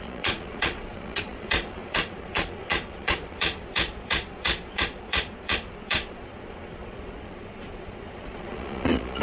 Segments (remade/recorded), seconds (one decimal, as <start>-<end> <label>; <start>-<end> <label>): 0.0-9.2 remade